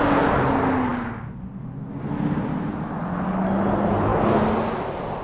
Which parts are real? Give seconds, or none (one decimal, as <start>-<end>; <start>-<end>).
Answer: 0.0-5.2